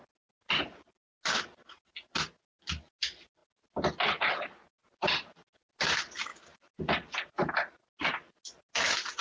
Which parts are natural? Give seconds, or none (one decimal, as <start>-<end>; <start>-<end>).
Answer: 0.0-9.2